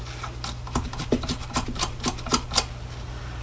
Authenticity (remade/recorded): recorded